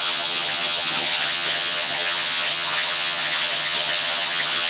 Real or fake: fake